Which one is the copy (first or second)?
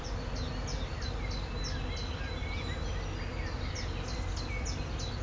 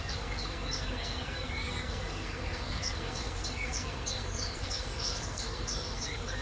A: second